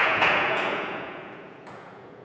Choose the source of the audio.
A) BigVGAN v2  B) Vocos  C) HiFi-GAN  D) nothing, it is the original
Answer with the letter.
B